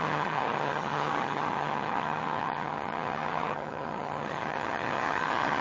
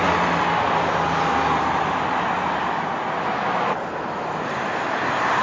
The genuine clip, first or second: second